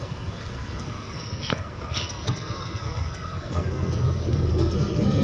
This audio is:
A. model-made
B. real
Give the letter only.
A